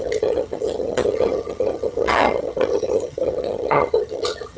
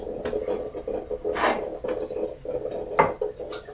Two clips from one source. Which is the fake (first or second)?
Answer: first